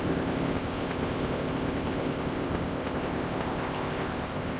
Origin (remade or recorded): remade